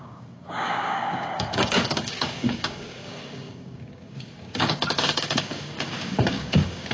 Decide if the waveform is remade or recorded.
remade